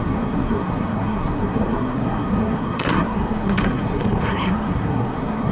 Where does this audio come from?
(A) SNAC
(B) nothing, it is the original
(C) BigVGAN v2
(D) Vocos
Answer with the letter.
A